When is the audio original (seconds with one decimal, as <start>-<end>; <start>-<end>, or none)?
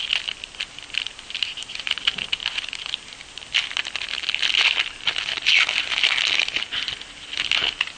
0.0-8.0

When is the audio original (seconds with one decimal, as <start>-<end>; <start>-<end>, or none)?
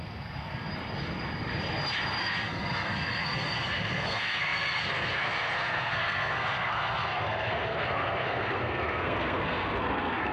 0.7-2.2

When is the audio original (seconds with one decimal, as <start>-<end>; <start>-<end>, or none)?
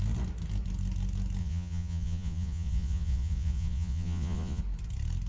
0.0-1.4; 4.6-5.3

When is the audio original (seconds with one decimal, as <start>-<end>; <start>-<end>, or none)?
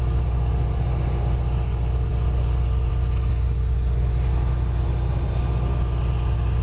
0.0-6.6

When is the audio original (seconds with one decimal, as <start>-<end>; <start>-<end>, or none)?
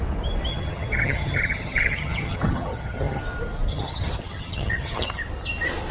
0.0-0.5; 3.2-3.7; 5.2-5.9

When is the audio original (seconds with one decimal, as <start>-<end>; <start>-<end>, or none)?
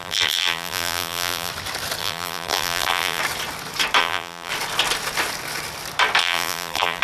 1.5-2.0; 3.2-4.0; 4.5-6.2